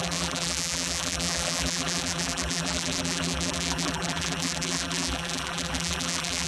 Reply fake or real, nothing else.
fake